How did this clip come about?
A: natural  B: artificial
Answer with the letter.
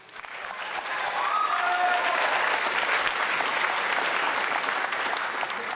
A